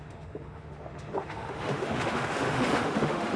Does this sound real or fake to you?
fake